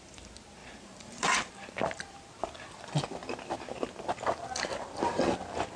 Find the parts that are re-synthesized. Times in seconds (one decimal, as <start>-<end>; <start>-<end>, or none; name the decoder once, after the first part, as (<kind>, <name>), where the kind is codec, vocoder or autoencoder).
0.6-1.5 (vocoder, BigVGAN v2)